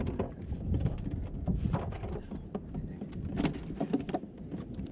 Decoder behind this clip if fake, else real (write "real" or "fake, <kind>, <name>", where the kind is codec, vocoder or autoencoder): real